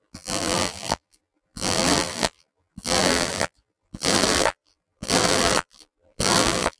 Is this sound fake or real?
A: fake